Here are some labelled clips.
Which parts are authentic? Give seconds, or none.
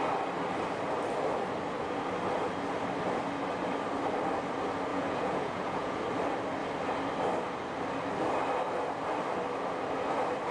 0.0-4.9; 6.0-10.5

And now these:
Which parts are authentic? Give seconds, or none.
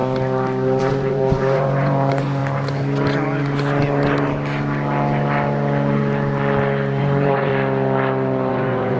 0.0-0.8; 2.4-7.0; 7.5-8.5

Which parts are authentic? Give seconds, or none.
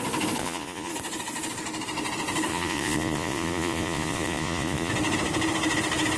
0.0-0.4; 0.9-2.5; 4.9-6.2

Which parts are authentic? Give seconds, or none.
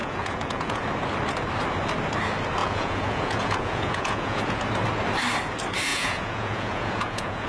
0.8-2.6; 4.6-5.9